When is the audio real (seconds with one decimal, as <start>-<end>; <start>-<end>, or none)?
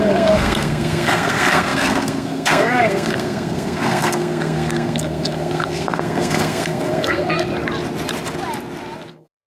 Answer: 7.5-9.1